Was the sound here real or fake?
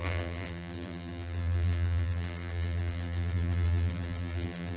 fake